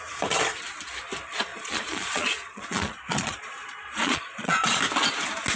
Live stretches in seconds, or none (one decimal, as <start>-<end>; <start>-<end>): 0.0-1.5; 4.8-5.5